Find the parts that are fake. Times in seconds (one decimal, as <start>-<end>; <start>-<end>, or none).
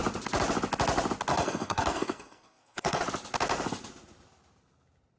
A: 1.3-3.0